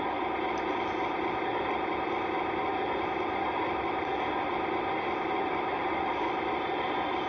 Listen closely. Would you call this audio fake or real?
fake